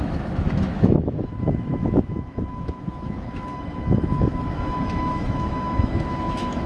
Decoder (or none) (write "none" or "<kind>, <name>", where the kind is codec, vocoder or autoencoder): autoencoder, DAC-VAE